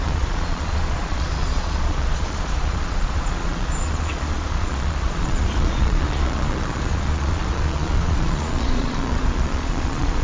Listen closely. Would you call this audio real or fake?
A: fake